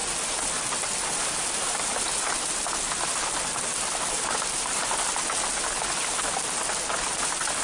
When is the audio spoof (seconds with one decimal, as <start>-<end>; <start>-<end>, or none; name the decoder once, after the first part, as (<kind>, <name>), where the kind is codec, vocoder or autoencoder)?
none